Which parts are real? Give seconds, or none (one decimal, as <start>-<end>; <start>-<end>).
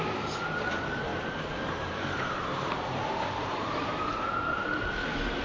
0.0-1.1; 4.1-5.4